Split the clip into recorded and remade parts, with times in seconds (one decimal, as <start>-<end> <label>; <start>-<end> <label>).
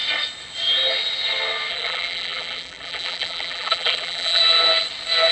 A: 0.0-1.7 recorded; 1.7-4.4 remade; 4.4-5.3 recorded